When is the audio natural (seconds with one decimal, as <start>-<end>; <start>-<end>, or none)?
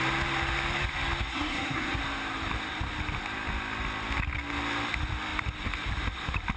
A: 0.0-1.3; 2.0-6.6